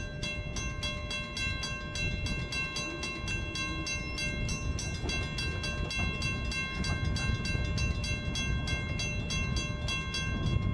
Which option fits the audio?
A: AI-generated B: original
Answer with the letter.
B